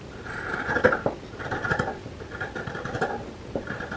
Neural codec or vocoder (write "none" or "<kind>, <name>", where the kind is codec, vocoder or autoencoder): none